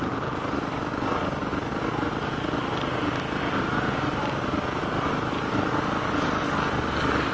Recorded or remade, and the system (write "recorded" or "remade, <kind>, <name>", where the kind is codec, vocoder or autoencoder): recorded